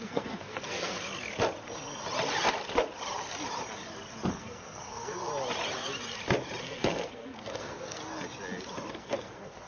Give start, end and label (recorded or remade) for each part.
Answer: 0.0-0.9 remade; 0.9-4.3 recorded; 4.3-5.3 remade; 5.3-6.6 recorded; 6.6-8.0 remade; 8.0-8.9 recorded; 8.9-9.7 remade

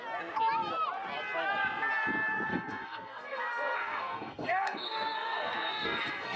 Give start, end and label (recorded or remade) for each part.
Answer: 0.0-2.5 recorded; 2.5-6.4 remade

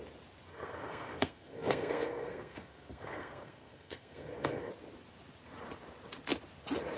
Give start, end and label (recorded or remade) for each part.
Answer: 0.0-0.5 recorded; 0.5-4.7 remade; 4.7-7.0 recorded

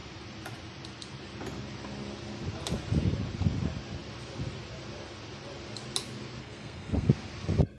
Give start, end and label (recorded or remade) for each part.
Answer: 0.0-6.4 recorded; 6.4-7.1 remade; 7.1-7.8 recorded

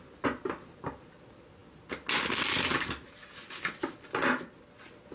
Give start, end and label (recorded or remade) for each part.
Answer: 0.0-5.1 recorded

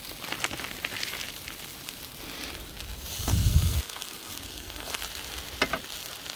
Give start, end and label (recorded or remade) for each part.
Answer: 0.0-3.2 recorded; 3.2-5.0 remade; 5.0-6.3 recorded

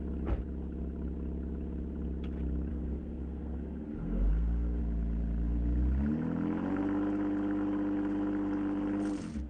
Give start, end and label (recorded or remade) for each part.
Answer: 0.0-2.7 recorded; 2.7-4.8 remade; 4.8-9.5 recorded